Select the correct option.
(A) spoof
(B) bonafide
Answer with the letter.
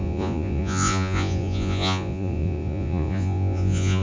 A